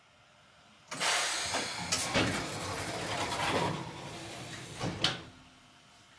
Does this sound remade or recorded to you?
recorded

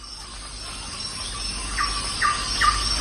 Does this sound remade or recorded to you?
recorded